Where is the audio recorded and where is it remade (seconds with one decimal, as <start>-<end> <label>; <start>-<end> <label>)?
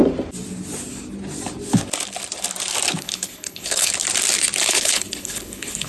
0.0-3.0 recorded; 3.0-3.9 remade; 3.9-4.7 recorded; 4.7-5.9 remade